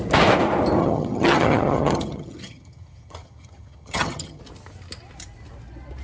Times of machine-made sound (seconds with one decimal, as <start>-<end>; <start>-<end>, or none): 0.8-4.4